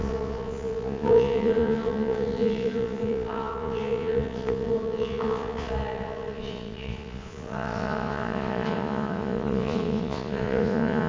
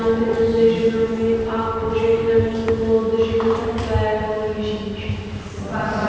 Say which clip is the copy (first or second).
first